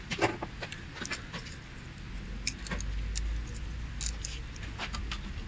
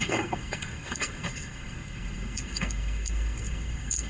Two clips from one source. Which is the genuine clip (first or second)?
first